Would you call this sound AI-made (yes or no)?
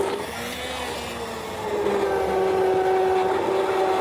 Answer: no